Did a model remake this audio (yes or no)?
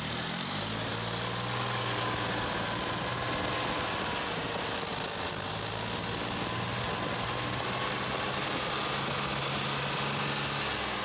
no